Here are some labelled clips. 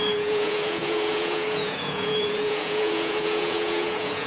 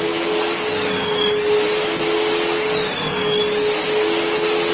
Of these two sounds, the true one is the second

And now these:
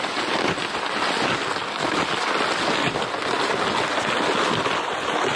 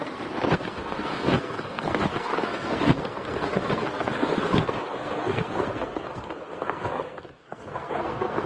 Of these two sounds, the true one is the first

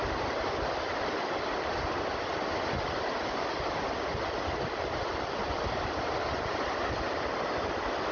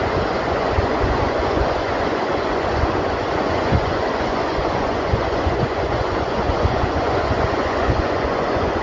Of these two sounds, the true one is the first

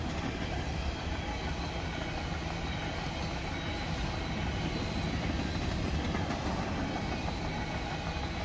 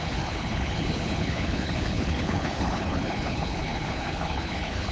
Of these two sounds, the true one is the first